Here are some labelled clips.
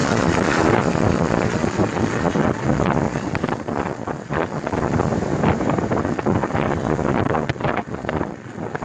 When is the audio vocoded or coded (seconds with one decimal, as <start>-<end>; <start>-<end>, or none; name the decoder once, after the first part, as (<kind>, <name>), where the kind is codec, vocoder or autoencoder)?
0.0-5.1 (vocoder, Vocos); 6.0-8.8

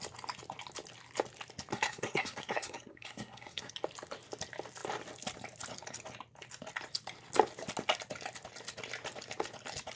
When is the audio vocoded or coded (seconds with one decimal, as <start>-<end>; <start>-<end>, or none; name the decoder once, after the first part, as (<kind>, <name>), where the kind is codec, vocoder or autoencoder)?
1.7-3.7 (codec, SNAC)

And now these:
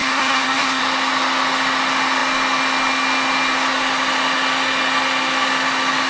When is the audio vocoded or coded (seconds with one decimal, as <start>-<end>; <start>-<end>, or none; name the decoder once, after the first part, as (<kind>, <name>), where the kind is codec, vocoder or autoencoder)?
0.0-0.8 (codec, SNAC)

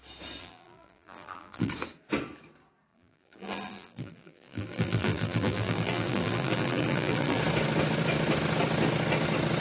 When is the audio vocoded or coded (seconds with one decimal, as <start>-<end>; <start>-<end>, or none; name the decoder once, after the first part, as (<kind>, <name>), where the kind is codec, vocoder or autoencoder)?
0.4-1.7 (vocoder, BigVGAN v2); 2.9-7.4